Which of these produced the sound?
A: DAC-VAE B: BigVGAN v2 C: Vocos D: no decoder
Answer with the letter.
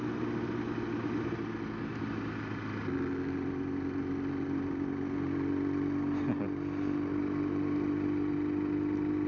D